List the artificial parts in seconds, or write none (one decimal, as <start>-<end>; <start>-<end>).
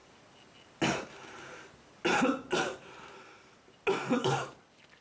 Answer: none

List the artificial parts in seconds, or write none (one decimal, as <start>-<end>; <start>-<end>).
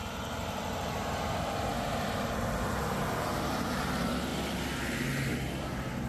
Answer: 0.0-3.7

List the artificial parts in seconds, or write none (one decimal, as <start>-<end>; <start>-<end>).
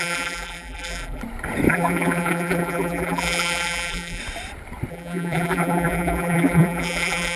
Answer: 0.0-1.2; 1.7-4.2; 4.9-7.4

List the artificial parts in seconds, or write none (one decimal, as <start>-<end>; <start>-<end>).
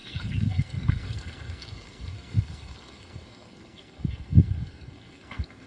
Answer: 0.0-5.7